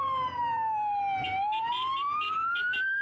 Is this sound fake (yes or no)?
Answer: yes